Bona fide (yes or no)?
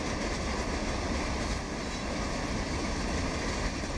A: yes